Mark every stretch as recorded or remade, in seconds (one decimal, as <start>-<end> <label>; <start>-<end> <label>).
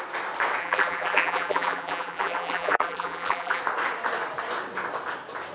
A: 0.0-0.6 recorded; 0.6-3.6 remade; 3.6-5.5 recorded